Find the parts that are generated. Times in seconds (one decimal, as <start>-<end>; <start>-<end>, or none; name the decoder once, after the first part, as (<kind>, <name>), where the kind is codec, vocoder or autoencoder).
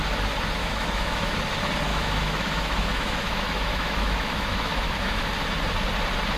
0.6-1.3 (autoencoder, DAC-VAE); 1.9-5.3